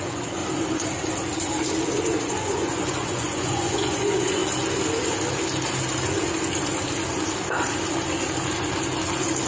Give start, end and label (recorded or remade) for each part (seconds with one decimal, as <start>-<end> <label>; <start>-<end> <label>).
0.0-0.4 remade; 0.4-1.9 recorded; 1.9-4.4 remade; 4.4-9.5 recorded